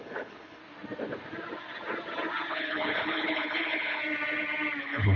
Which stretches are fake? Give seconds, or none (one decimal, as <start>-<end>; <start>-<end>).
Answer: 0.0-0.6; 2.5-4.0; 4.8-5.2